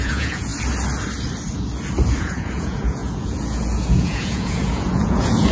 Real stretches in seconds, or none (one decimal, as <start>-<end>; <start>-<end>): 0.5-2.2